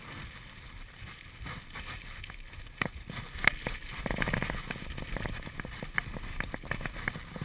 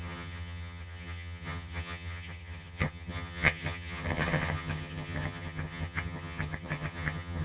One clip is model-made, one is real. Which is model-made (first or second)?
second